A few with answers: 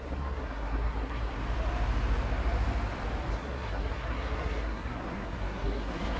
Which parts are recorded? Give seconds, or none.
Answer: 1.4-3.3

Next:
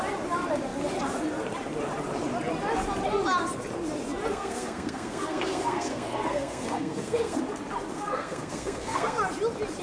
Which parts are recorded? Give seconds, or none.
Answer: 0.0-4.3; 7.4-7.9; 9.2-9.8

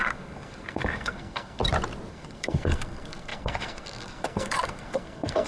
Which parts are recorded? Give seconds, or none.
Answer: 1.6-2.1

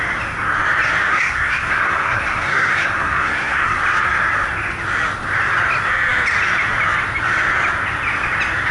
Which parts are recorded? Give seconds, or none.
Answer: 0.0-1.1; 3.8-8.7

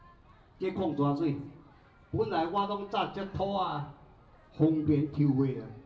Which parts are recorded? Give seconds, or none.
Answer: 0.0-5.9

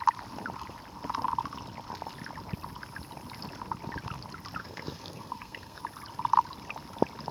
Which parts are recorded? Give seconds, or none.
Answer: 0.0-4.6; 5.8-7.3

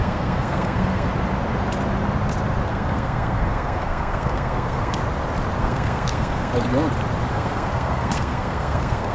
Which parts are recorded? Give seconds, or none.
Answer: 1.1-2.7; 5.0-5.6; 6.5-7.3